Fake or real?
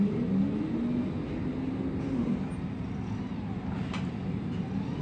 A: real